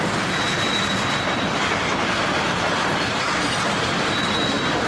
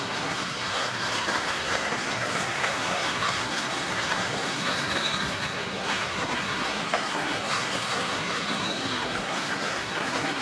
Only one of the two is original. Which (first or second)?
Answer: first